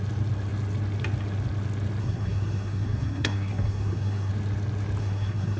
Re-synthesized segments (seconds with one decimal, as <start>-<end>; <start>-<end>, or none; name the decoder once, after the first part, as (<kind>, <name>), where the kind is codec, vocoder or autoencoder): 2.0-4.3 (codec, SNAC); 5.0-5.6